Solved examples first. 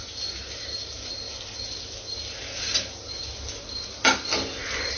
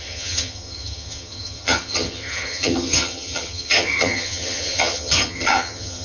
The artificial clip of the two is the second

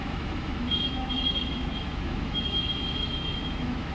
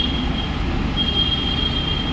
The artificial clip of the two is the first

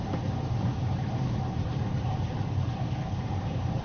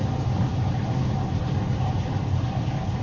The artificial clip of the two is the first